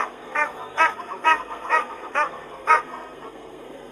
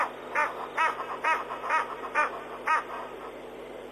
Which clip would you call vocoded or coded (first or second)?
first